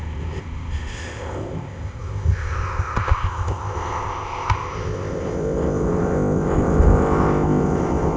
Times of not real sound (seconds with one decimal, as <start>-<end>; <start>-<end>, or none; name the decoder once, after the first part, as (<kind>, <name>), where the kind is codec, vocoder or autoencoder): 0.0-8.2 (codec, ZipCodec)